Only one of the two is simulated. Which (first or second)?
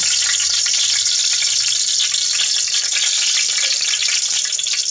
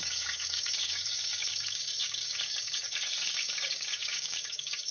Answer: second